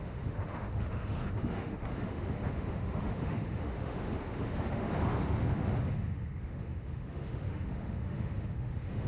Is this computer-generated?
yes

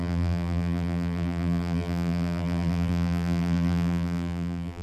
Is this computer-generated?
yes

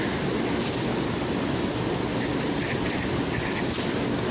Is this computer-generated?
no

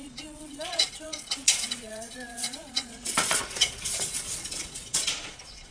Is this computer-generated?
yes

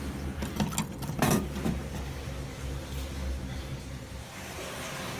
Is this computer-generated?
no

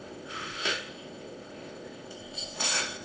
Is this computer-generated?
yes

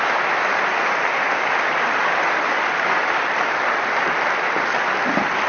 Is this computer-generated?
no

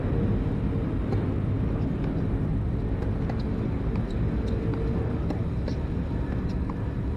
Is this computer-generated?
no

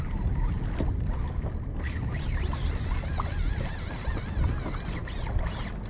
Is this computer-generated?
no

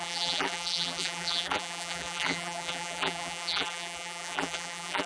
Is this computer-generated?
yes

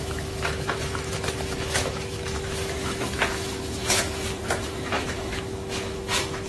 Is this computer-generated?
yes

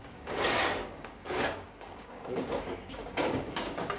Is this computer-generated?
yes